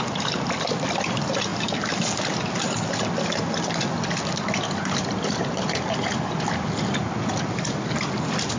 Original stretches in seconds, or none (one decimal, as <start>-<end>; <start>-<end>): 0.0-8.6